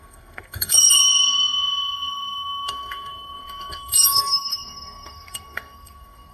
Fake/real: fake